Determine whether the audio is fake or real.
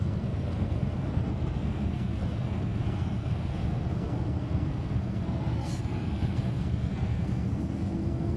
fake